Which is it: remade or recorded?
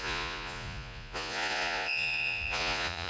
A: remade